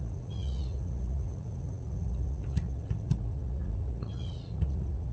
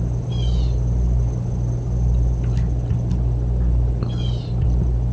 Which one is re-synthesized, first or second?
first